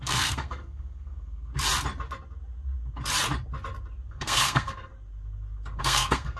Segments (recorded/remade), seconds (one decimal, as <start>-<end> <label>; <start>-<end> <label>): 0.0-1.5 remade; 1.5-4.1 recorded; 4.1-4.9 remade; 4.9-5.8 recorded; 5.8-6.4 remade